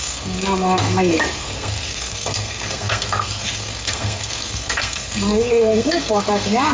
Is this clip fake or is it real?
fake